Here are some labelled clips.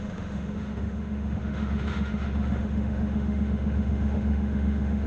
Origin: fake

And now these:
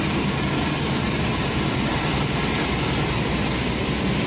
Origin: real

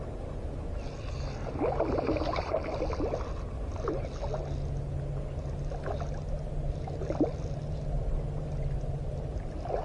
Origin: real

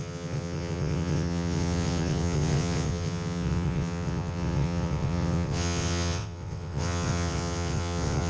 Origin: fake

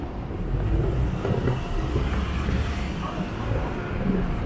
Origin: real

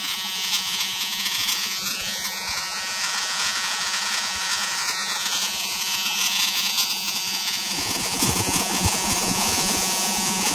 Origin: fake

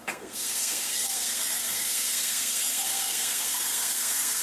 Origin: fake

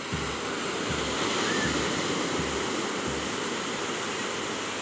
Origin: real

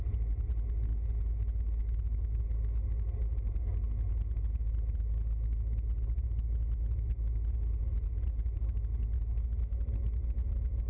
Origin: real